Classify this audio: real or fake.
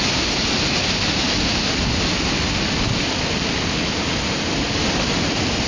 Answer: real